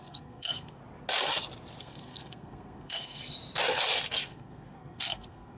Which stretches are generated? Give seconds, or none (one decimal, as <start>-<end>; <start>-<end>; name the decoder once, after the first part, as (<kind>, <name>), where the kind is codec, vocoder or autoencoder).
0.0-0.8 (codec, SNAC); 1.8-3.2; 4.3-5.6